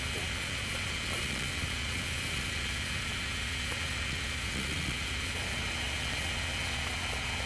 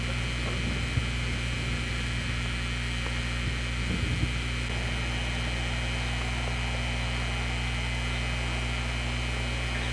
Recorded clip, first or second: second